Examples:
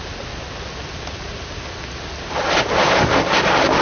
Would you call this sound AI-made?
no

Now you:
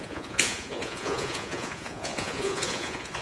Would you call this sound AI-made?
yes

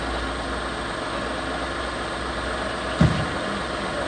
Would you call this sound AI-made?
no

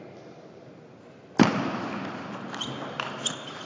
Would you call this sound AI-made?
no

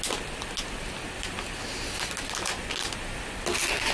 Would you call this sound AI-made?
no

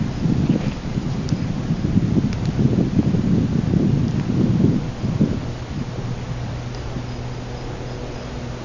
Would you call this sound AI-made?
no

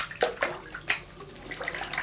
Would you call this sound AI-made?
no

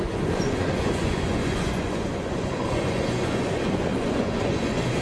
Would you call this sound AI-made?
yes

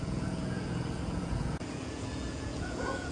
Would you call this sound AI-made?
yes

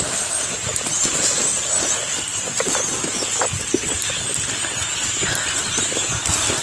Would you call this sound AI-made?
no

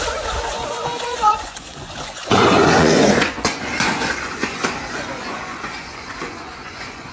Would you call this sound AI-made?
yes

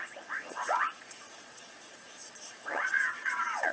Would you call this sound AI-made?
yes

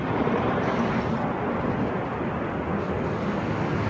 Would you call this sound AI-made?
no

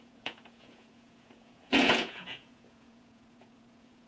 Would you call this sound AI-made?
yes